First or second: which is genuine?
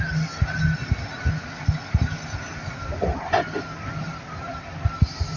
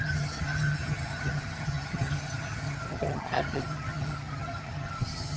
first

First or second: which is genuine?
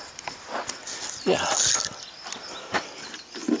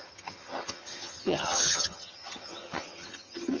first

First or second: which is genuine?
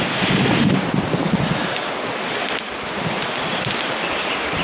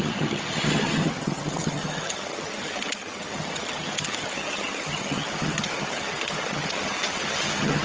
first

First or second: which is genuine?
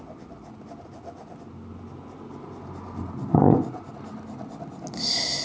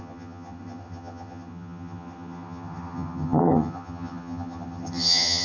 first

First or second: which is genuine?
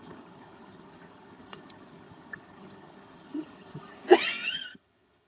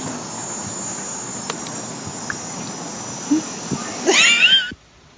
second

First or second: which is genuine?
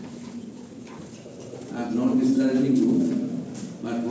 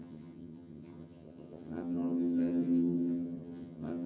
first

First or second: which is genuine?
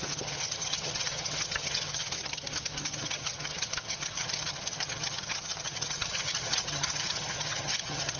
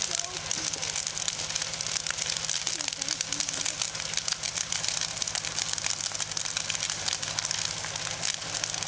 second